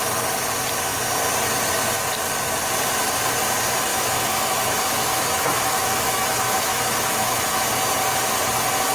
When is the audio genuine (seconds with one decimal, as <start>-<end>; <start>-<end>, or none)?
0.0-3.9; 7.7-8.9